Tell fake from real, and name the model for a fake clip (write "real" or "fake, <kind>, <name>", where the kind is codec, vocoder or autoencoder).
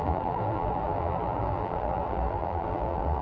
fake, vocoder, BigVGAN v2